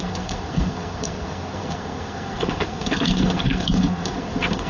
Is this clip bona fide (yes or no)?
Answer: no